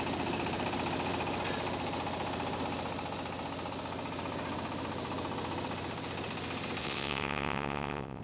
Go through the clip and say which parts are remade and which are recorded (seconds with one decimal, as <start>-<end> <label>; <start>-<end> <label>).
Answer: 0.0-6.8 recorded; 6.8-8.2 remade